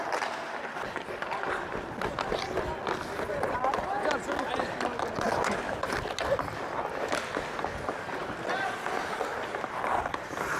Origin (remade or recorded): recorded